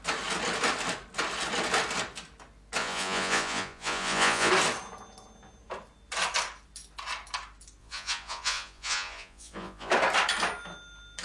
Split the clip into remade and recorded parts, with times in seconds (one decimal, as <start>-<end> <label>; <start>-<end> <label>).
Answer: 0.0-2.8 recorded; 2.8-4.5 remade; 4.5-7.8 recorded; 7.8-9.9 remade; 9.9-11.2 recorded